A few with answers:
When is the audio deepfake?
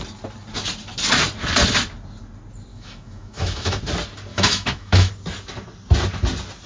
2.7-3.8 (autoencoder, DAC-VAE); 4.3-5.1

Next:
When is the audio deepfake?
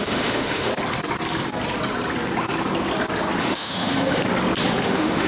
0.0-0.7 (autoencoder, DAC-VAE); 3.4-4.2; 4.8-5.3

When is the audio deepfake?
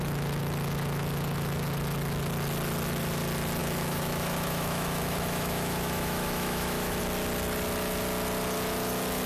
3.6-7.0 (autoencoder, DAC-VAE)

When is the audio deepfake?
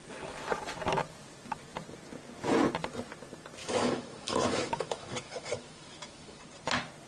3.6-6.4 (autoencoder, DAC-VAE)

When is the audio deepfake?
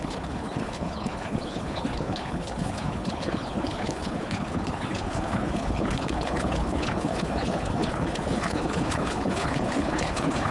0.0-10.5 (codec, HILCodec)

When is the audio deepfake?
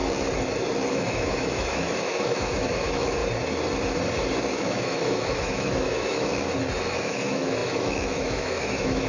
0.9-3.2 (autoencoder, DAC-VAE); 4.5-6.3; 6.9-9.1